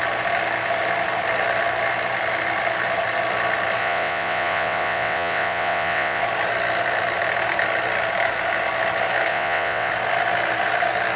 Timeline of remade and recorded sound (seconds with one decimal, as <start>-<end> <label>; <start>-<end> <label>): 0.0-3.8 recorded; 3.8-6.2 remade; 6.2-9.3 recorded; 9.3-9.9 remade; 9.9-11.2 recorded